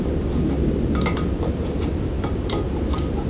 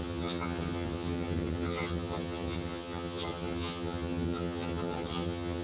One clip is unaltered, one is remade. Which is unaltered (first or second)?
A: first